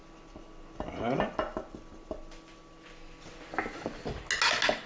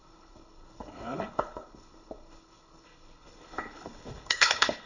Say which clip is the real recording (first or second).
first